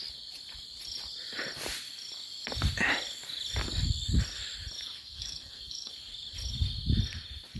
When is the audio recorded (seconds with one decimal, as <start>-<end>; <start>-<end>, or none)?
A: 0.0-5.0; 5.9-7.6